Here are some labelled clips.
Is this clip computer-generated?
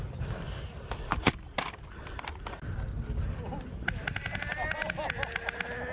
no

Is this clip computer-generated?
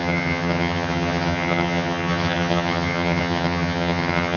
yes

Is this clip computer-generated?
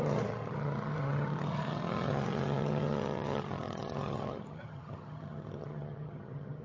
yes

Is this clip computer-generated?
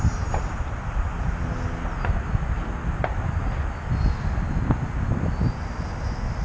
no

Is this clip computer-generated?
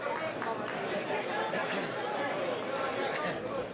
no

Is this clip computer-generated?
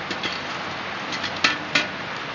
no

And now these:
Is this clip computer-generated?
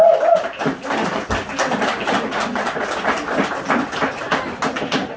no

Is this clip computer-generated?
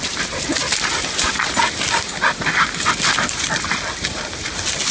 no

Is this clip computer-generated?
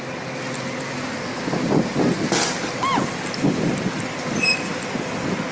no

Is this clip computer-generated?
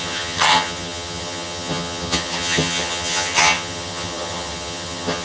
yes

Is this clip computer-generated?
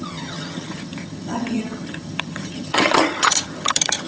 yes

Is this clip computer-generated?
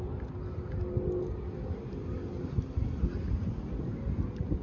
no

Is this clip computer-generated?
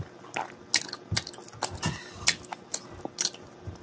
no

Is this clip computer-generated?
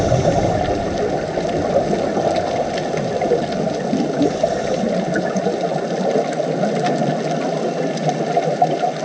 no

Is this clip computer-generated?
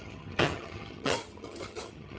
yes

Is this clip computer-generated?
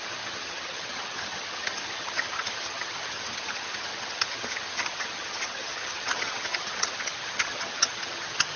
yes